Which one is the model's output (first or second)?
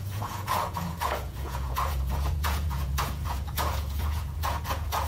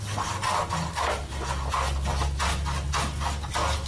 first